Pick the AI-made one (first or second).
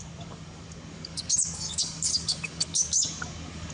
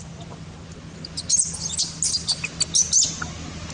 first